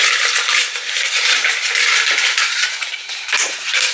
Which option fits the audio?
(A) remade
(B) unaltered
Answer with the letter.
B